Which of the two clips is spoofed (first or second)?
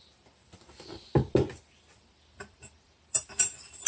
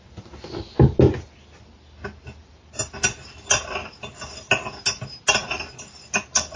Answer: first